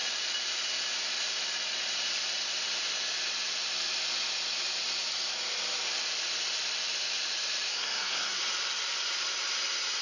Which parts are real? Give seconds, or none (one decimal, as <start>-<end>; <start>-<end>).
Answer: 0.0-7.7; 8.4-10.0

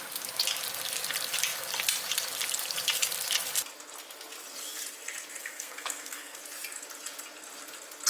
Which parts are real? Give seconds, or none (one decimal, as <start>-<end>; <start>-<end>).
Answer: 0.0-5.4; 6.4-8.1